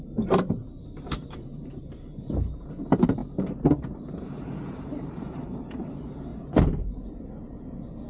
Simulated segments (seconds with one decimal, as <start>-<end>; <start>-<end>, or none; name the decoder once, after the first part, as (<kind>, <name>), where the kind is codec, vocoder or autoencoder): 0.0-8.1 (vocoder, BigVGAN v2)

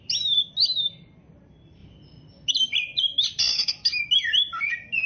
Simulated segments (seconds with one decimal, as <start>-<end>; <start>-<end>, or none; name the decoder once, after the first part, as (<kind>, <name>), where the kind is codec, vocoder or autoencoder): 3.5-4.1 (autoencoder, DAC-VAE)

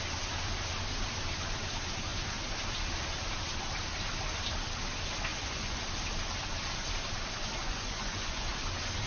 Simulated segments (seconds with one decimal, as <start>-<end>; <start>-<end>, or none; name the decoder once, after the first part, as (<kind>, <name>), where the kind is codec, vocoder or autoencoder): 5.3-5.8 (vocoder, Vocos); 7.6-8.5

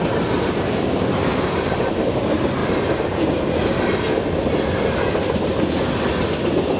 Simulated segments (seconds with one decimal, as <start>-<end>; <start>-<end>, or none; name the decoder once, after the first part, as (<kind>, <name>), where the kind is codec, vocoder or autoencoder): 0.0-2.6 (vocoder, BigVGAN v2)

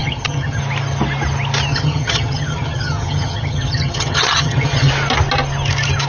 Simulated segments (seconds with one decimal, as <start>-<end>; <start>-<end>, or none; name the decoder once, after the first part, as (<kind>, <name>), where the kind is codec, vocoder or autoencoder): 0.0-0.6 (vocoder, HiFi-GAN); 1.7-4.9